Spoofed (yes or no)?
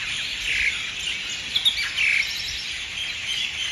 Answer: no